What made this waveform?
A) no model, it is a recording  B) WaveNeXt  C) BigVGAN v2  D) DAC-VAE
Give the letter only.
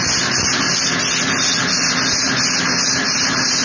A